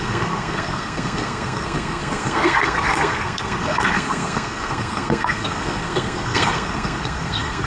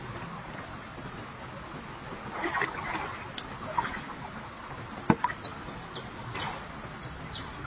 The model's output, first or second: first